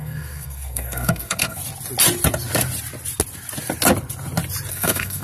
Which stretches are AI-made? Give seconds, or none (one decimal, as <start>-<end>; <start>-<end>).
0.0-1.6; 4.7-5.2